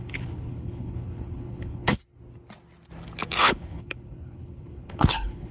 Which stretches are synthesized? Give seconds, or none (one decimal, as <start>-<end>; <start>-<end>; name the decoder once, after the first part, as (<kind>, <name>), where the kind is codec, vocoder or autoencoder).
0.0-2.0 (codec, HILCodec); 3.4-5.5